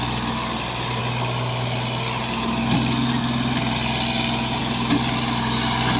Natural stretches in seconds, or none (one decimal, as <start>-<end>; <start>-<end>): 0.0-6.0